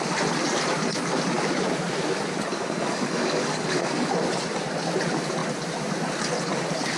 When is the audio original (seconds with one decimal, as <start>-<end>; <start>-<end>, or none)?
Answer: 0.0-2.5; 4.1-7.0